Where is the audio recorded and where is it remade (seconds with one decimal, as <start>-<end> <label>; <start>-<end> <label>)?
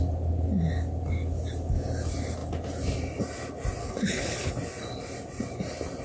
0.0-3.8 recorded; 3.8-4.5 remade; 4.5-6.0 recorded